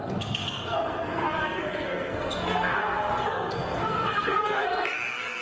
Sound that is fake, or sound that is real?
fake